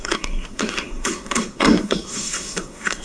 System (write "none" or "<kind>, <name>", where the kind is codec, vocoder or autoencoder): codec, SNAC